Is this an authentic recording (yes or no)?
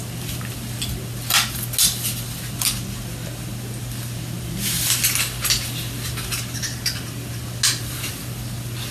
yes